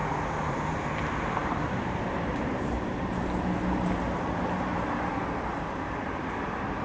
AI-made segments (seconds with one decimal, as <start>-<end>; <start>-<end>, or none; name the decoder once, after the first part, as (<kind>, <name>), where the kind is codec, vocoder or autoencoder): 0.5-6.8 (vocoder, BigVGAN v2)